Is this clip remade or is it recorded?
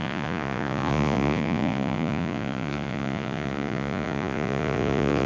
remade